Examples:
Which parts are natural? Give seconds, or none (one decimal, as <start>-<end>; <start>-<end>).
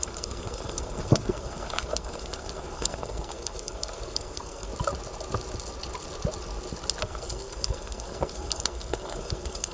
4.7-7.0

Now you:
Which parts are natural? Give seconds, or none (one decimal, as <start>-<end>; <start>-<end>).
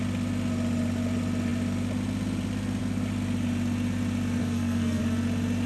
0.0-4.4; 5.0-5.7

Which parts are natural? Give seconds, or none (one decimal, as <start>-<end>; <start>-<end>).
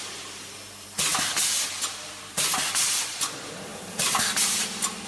0.0-5.1